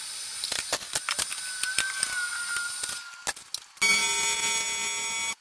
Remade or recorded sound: recorded